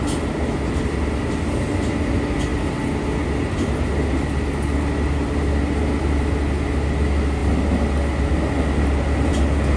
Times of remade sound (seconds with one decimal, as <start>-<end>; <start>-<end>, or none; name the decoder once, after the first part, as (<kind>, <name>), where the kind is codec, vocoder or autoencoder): none